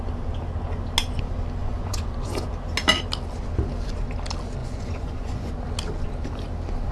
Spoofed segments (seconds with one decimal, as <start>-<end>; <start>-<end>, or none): 1.6-2.5; 4.6-5.5